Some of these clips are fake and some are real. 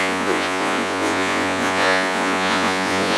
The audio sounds fake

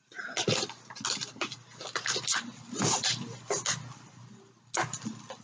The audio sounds real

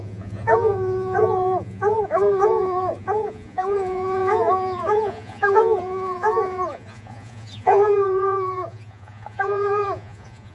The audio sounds fake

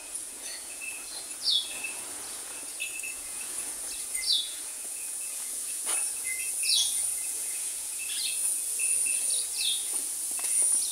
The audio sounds fake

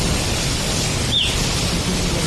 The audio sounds real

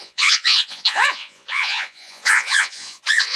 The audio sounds fake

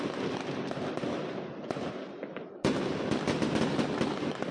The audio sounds real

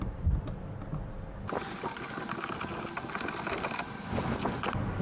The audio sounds real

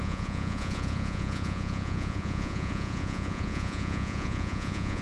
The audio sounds fake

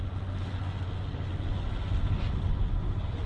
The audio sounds real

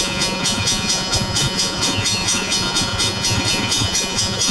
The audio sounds fake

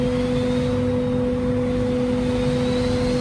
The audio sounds real